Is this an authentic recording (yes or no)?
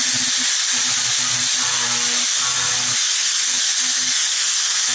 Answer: yes